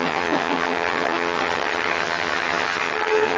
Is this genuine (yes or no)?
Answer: no